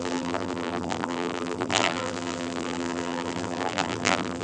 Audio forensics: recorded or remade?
remade